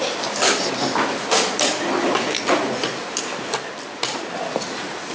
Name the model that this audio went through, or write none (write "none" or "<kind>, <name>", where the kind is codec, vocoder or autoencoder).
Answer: none